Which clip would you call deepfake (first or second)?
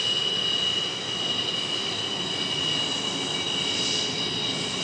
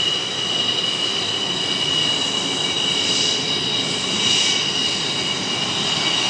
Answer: second